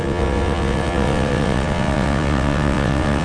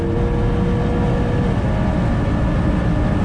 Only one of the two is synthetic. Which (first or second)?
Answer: first